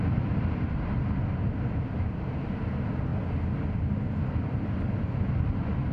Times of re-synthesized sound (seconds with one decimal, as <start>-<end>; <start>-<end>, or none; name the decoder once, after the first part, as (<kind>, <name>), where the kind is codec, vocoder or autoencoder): none